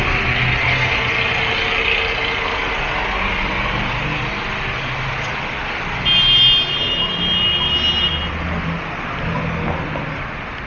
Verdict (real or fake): real